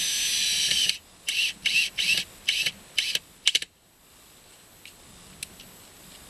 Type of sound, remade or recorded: recorded